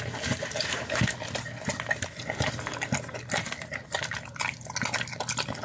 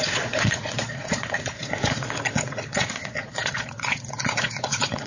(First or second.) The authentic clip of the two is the first